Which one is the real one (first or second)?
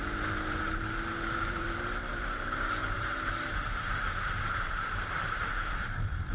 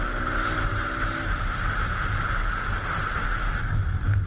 second